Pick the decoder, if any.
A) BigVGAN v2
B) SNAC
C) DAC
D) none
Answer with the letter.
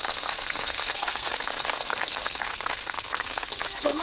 B